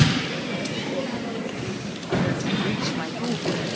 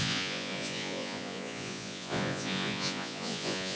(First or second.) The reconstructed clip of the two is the second